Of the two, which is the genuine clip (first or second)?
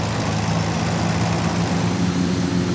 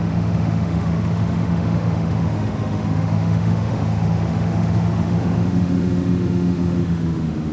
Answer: first